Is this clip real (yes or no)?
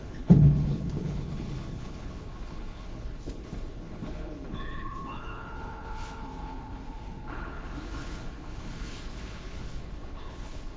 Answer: no